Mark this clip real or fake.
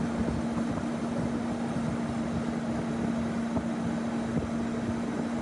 real